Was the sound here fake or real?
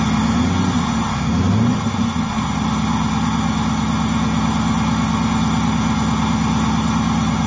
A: real